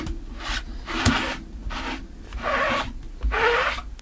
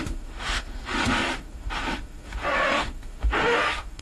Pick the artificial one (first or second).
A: second